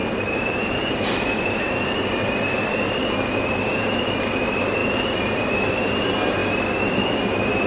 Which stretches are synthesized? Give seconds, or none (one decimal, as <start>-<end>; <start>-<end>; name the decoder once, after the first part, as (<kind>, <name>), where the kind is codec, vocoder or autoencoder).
0.0-7.7 (vocoder, BigVGAN v2)